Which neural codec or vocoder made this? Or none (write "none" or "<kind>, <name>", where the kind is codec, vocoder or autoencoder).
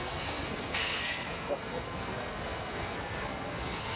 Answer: codec, SNAC